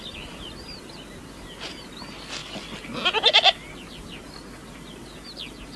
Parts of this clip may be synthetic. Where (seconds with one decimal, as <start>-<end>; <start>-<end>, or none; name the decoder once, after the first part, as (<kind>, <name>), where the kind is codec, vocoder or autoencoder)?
none